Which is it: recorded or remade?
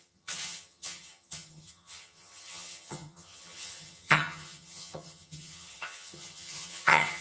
remade